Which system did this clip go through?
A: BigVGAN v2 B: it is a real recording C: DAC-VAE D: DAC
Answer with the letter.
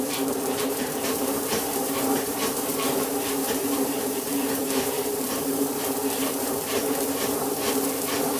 A